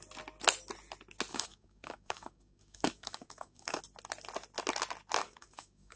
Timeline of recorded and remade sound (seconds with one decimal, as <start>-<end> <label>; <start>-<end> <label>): 0.0-1.3 recorded; 1.3-3.8 remade; 3.8-5.2 recorded; 5.2-6.0 remade